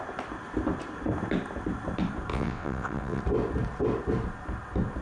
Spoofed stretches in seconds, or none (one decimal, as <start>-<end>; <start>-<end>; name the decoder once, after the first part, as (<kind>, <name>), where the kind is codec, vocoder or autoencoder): 2.3-3.2 (vocoder, WaveNeXt)